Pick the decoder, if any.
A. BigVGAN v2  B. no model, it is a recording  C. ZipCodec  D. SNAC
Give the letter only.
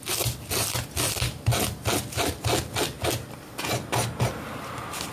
B